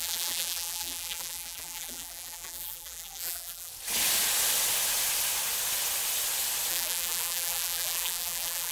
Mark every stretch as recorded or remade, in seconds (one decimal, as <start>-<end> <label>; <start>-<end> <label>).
0.0-3.7 remade; 3.7-6.7 recorded; 6.7-8.7 remade

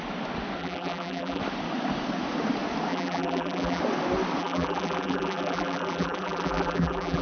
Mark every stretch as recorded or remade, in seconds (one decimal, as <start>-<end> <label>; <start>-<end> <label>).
0.0-0.6 recorded; 0.6-1.4 remade; 1.4-2.9 recorded; 2.9-3.8 remade; 3.8-4.4 recorded; 4.4-7.2 remade

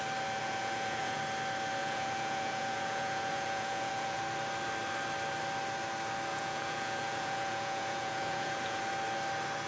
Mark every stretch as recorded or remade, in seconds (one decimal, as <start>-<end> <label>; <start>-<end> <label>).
0.0-0.4 recorded; 0.4-1.2 remade; 1.2-1.8 recorded; 1.8-4.2 remade; 4.2-6.3 recorded; 6.3-8.8 remade; 8.8-9.7 recorded

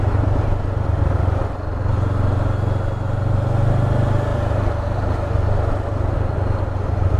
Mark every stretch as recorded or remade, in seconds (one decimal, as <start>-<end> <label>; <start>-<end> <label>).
0.0-7.2 recorded

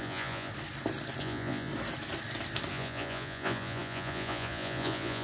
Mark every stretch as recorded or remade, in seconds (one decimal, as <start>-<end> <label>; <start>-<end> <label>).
0.0-0.5 remade; 0.5-1.2 recorded; 1.2-1.7 remade; 1.7-2.7 recorded; 2.7-5.2 remade

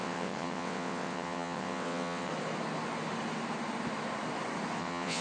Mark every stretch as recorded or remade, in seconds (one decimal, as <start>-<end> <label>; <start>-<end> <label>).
0.0-2.3 remade; 2.3-4.8 recorded; 4.8-5.2 remade

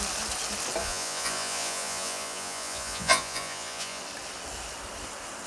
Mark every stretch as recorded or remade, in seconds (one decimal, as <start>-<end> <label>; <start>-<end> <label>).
0.0-0.8 recorded; 0.8-4.0 remade; 4.0-5.5 recorded

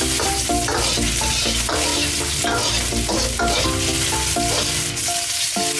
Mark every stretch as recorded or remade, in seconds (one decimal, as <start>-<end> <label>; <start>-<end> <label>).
0.0-1.9 remade; 1.9-5.8 recorded